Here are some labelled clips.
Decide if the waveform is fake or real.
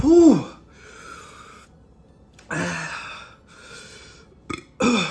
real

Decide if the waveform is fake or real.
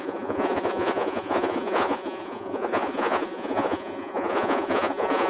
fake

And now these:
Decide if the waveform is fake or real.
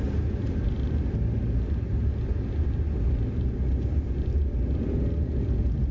real